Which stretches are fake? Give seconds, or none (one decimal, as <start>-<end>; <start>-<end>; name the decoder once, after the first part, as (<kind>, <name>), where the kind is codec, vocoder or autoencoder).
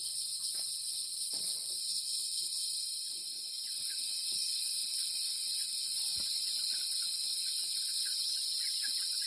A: 0.0-2.6 (vocoder, WaveNeXt); 3.7-6.1; 6.9-8.1